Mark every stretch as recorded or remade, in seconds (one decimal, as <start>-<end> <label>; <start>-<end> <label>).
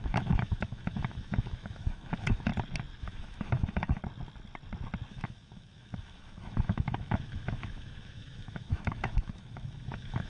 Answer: 0.0-2.5 remade; 2.5-3.0 recorded; 3.0-4.0 remade; 4.0-5.1 recorded; 5.1-10.3 remade